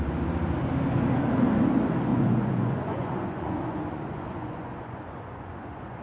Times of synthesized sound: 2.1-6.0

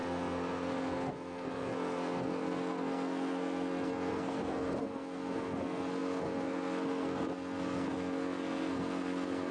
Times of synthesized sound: 0.0-9.5

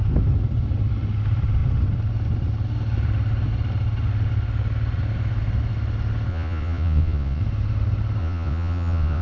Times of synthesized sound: 6.3-7.4; 8.2-9.2